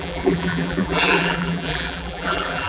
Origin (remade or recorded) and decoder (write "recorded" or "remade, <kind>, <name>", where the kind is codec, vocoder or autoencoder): remade, vocoder, BigVGAN v2